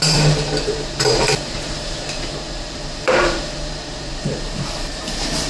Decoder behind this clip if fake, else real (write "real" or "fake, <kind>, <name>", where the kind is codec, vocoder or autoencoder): fake, vocoder, BigVGAN v2